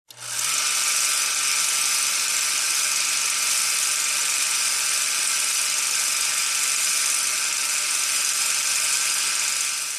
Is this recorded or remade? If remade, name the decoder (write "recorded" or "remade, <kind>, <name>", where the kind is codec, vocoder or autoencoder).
recorded